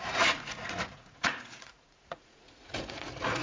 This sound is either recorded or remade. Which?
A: remade